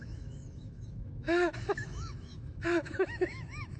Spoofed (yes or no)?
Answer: yes